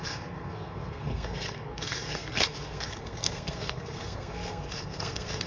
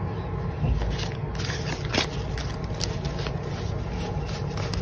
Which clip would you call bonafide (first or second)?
second